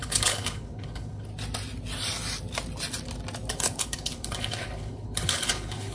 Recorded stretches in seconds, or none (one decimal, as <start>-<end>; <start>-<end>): 1.3-3.5